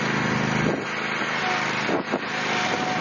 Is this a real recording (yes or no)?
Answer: yes